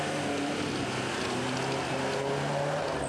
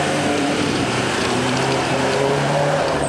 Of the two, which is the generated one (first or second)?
second